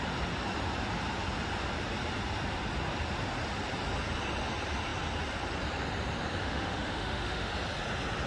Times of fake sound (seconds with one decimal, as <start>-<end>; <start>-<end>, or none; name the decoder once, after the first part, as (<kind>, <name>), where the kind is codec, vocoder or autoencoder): 6.4-7.5 (autoencoder, DAC-VAE)